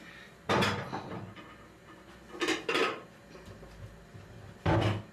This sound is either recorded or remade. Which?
recorded